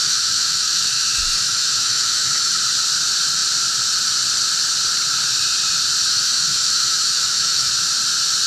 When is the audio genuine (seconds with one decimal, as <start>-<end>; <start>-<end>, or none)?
2.6-6.1; 7.7-8.5